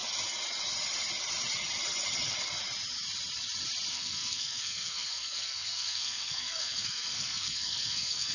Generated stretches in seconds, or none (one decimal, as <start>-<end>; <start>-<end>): 3.9-8.3